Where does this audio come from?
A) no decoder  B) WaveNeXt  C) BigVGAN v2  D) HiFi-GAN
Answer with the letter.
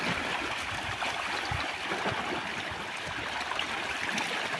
A